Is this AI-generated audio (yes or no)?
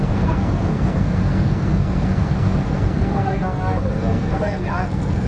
yes